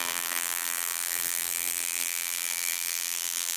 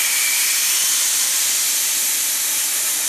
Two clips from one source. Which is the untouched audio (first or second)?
second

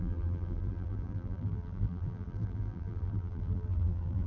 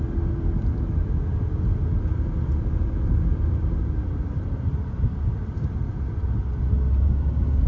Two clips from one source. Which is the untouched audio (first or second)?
second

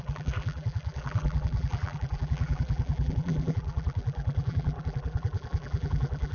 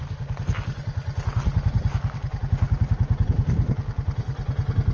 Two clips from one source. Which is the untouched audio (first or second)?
second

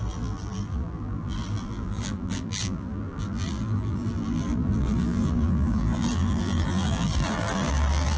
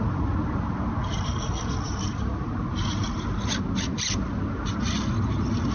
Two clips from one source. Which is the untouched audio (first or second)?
second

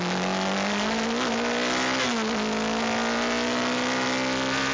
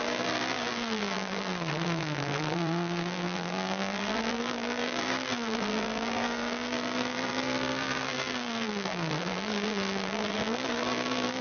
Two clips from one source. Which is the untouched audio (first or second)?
first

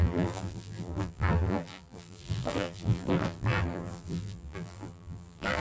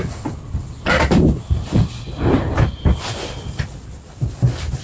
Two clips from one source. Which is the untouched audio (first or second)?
second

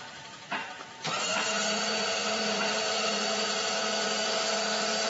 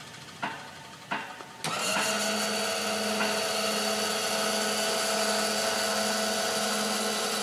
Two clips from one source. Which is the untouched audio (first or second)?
second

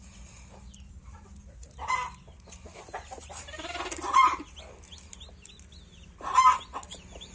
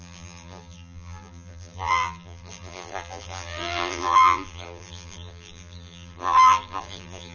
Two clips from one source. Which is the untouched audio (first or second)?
first